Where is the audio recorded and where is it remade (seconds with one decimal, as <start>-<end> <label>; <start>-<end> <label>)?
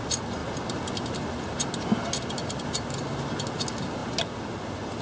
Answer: 0.0-5.0 recorded